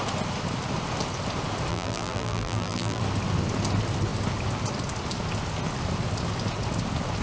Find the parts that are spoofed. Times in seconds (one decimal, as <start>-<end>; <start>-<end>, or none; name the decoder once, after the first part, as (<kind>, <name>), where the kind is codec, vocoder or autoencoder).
1.7-3.0 (vocoder, BigVGAN v2)